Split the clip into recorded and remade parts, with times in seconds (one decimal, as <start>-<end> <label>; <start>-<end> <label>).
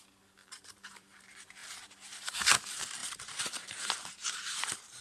0.0-0.4 recorded; 0.4-1.2 remade; 1.2-3.0 recorded; 3.0-5.0 remade